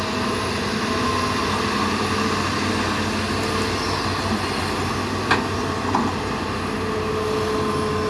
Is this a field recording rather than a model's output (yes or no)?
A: yes